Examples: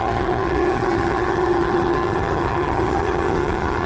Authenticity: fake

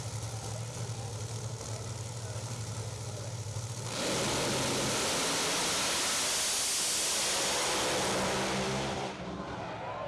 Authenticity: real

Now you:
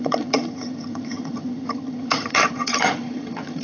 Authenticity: fake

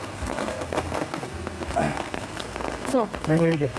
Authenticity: fake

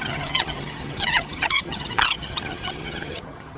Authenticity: fake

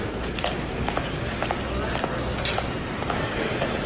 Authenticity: real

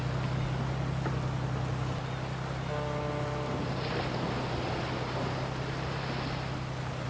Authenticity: real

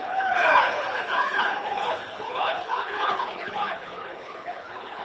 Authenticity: fake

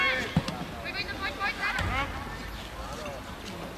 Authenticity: real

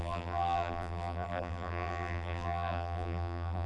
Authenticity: fake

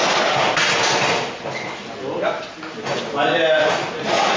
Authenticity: real